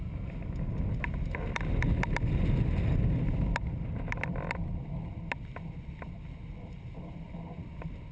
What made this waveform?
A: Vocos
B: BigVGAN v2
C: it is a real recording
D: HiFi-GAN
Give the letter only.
C